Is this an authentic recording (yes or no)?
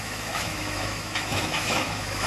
no